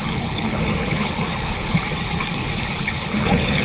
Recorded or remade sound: remade